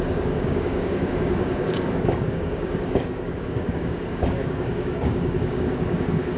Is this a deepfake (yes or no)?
yes